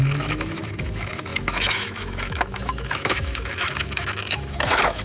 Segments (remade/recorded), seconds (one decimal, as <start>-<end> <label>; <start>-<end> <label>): 0.0-5.0 remade